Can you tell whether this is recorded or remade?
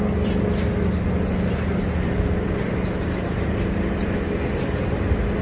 recorded